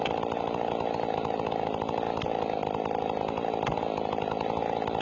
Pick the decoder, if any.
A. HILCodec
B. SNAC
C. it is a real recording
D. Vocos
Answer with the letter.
C